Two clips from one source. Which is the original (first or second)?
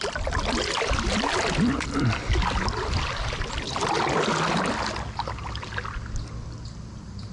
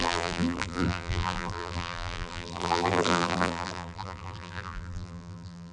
first